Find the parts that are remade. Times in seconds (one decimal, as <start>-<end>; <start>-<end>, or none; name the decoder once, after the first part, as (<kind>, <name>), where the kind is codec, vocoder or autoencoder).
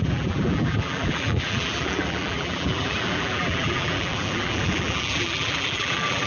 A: 0.0-6.3 (vocoder, BigVGAN v2)